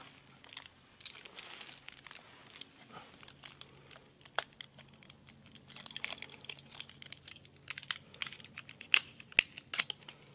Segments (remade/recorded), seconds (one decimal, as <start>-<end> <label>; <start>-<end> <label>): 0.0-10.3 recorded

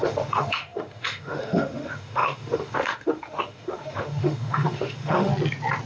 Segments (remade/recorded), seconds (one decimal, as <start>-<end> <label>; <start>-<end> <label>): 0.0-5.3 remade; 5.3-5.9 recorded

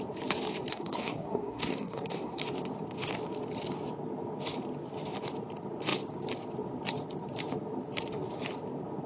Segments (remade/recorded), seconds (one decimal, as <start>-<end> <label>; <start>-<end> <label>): 0.0-0.7 recorded; 0.7-2.4 remade; 2.4-9.1 recorded